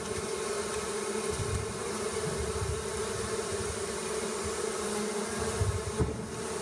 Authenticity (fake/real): real